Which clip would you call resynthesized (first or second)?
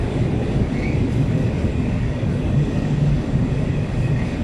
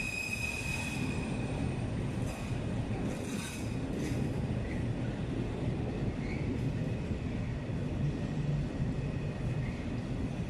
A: first